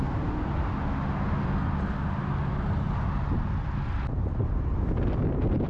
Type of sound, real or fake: real